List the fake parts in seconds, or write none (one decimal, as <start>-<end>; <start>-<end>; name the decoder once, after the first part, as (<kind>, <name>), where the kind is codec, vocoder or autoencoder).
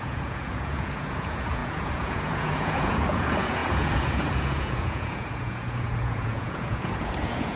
0.0-7.6 (vocoder, Vocos)